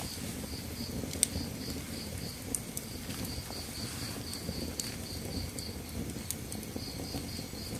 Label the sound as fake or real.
real